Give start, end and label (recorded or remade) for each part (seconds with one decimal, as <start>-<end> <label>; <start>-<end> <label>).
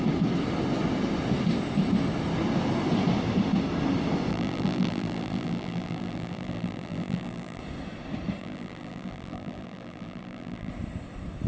0.0-4.3 recorded; 4.3-7.6 remade; 7.6-8.4 recorded; 8.4-10.7 remade; 10.7-11.5 recorded